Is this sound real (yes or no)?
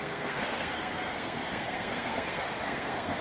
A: no